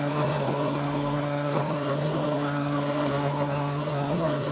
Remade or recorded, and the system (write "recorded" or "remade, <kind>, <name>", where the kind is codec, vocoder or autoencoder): remade, codec, SNAC